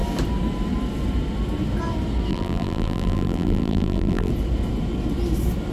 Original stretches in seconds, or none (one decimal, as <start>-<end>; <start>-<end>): 0.0-2.3; 4.3-5.7

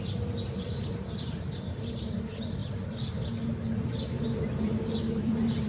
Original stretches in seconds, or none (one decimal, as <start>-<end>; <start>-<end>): 2.6-4.2

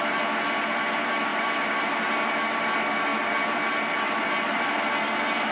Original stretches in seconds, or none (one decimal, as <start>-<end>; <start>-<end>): 0.0-1.3; 2.6-3.1; 4.8-5.5

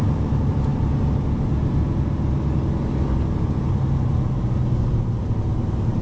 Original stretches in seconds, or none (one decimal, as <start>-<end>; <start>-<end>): 0.7-3.3

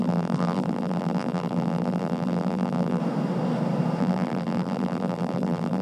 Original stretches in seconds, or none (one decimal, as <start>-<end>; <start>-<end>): 3.0-4.0

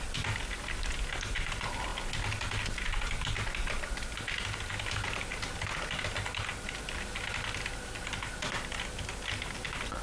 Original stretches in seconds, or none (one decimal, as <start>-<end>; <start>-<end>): 0.0-10.0

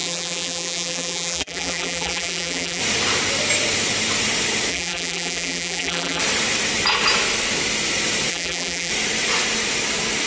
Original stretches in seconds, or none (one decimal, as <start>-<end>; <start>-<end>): 2.8-4.7; 6.2-8.3; 8.9-10.3